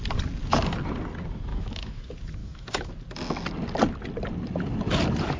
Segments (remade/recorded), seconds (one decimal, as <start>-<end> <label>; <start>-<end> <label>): 0.0-1.5 recorded; 1.5-2.0 remade; 2.0-2.4 recorded; 2.4-2.9 remade; 2.9-5.4 recorded